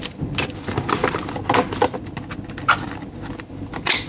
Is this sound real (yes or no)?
yes